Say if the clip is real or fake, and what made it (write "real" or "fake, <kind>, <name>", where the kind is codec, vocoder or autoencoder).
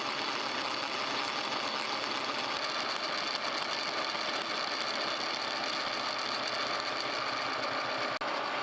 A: real